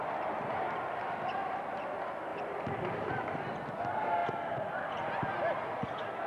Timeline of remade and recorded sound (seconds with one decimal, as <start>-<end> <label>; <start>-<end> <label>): 0.0-1.0 remade; 1.0-2.3 recorded; 2.3-3.1 remade; 3.1-4.2 recorded; 4.2-4.9 remade; 4.9-6.3 recorded